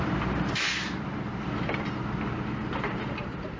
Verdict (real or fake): real